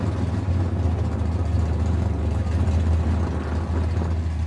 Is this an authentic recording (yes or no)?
yes